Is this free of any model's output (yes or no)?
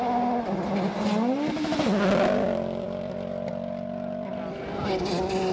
yes